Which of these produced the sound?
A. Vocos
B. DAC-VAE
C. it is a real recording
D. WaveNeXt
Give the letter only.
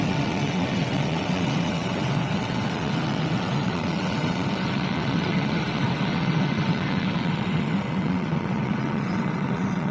D